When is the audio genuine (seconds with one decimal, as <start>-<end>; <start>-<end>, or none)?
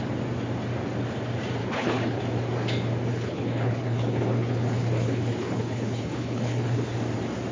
0.0-1.6; 2.2-3.1; 6.8-7.5